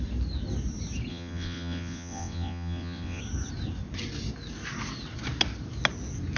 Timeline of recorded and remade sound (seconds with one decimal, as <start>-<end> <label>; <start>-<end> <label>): 0.0-1.1 recorded; 1.1-3.2 remade; 3.2-6.4 recorded